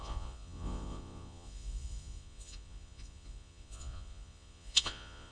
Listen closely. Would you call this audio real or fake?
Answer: fake